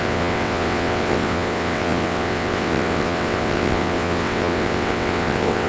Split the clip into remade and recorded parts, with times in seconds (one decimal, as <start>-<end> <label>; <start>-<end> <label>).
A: 0.0-5.7 remade